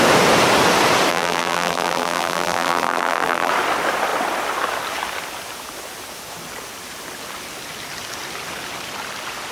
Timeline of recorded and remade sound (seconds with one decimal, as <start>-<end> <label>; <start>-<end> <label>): 0.0-1.1 recorded; 1.1-3.5 remade; 3.5-9.5 recorded

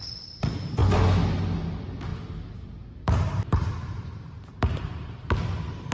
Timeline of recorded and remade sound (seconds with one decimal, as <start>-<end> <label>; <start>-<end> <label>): 0.0-2.1 recorded; 2.1-5.3 remade; 5.3-5.9 recorded